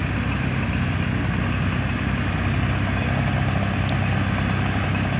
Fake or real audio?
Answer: real